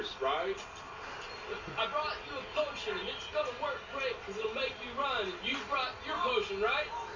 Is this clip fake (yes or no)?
no